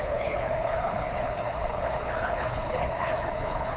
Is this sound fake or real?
fake